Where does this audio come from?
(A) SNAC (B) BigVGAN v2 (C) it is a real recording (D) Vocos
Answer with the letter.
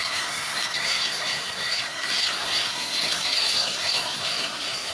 A